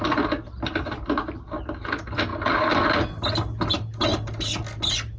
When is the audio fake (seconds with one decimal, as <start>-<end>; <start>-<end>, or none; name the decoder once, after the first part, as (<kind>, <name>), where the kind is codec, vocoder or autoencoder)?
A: none

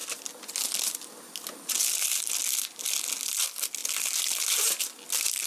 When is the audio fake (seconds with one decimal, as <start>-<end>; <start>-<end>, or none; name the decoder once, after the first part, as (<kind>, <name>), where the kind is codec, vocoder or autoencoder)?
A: none

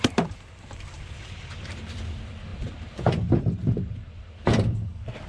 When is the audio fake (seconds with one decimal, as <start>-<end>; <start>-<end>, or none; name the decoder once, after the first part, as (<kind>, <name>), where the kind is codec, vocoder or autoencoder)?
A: 0.0-5.3 (vocoder, BigVGAN v2)

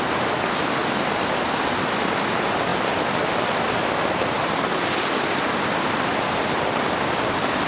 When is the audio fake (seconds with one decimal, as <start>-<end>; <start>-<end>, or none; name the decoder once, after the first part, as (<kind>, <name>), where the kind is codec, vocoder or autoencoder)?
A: 0.0-0.8 (vocoder, BigVGAN v2); 1.8-2.7; 4.1-7.7